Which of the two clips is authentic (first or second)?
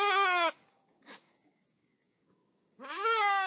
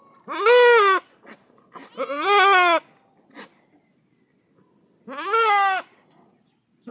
second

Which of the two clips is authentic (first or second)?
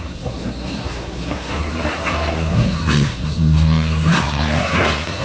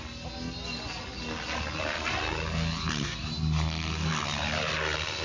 second